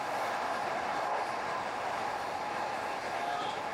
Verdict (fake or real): real